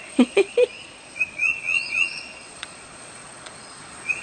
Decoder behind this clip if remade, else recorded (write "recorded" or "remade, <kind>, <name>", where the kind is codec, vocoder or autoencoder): remade, vocoder, Vocos